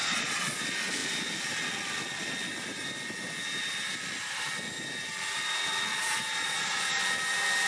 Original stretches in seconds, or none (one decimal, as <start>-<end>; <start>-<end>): 0.6-5.9; 7.0-7.7